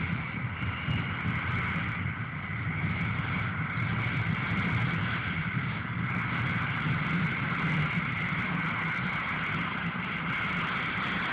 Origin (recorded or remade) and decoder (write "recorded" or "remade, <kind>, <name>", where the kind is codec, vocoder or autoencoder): recorded